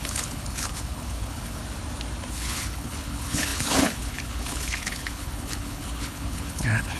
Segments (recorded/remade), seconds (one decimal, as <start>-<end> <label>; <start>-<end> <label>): 0.0-1.6 remade; 1.6-2.3 recorded; 2.3-7.0 remade